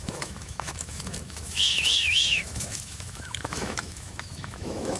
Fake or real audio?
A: fake